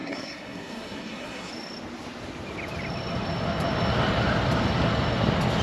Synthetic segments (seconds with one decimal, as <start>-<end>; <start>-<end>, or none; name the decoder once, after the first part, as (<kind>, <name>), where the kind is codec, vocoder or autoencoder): 0.0-1.5 (codec, SNAC)